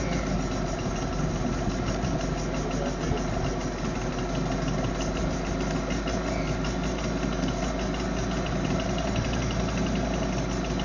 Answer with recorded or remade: recorded